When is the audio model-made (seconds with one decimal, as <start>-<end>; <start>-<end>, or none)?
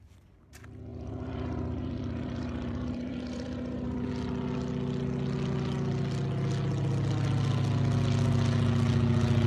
0.9-4.1